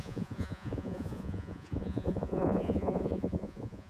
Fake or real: fake